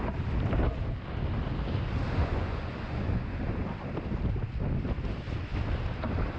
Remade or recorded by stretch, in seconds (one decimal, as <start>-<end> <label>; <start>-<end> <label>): 0.0-2.2 recorded; 2.2-3.4 remade; 3.4-6.4 recorded